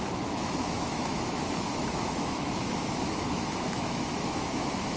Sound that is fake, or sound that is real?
fake